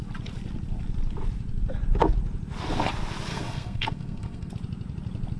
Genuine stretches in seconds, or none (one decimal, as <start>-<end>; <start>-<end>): 0.0-3.3; 4.5-5.4